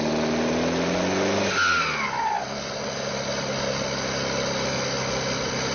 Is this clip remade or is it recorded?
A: recorded